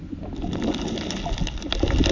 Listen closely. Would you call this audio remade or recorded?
recorded